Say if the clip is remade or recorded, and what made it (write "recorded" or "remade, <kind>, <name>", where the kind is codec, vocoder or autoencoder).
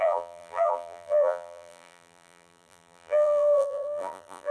remade, vocoder, BigVGAN v2